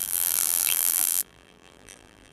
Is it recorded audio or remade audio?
remade